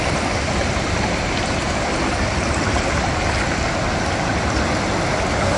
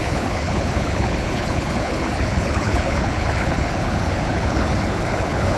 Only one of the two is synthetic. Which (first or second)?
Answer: second